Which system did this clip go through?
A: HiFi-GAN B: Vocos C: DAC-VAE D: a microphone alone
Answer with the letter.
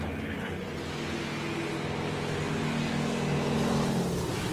D